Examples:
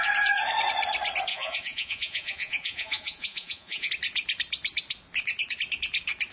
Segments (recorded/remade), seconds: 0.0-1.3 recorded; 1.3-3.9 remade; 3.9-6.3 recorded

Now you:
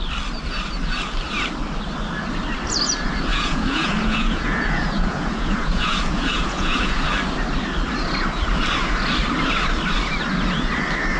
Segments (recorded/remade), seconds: 0.0-3.3 recorded; 3.3-7.1 remade; 7.1-11.2 recorded

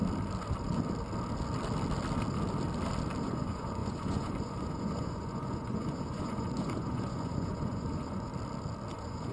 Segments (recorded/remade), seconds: 0.0-3.2 recorded; 3.2-8.3 remade; 8.3-8.9 recorded; 8.9-9.3 remade

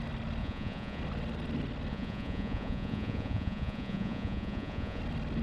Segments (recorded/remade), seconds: 0.0-0.4 recorded; 0.4-1.0 remade; 1.0-1.9 recorded; 1.9-5.0 remade; 5.0-5.4 recorded

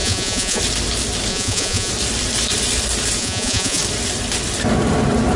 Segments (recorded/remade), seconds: 0.0-0.6 remade; 0.6-1.3 recorded; 1.3-1.9 remade; 1.9-3.2 recorded; 3.2-3.8 remade; 3.8-5.4 recorded

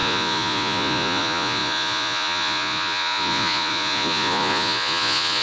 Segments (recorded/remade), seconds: 0.0-5.4 remade

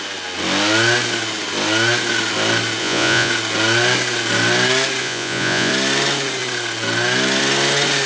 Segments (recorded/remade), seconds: 0.0-2.8 recorded; 2.8-3.3 remade; 3.3-5.0 recorded; 5.0-5.7 remade; 5.7-8.1 recorded

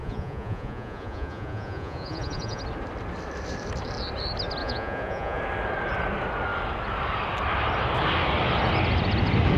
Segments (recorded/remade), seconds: 0.0-2.6 remade; 2.6-4.6 recorded; 4.6-5.4 remade; 5.4-9.6 recorded